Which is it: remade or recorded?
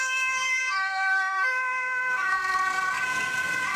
remade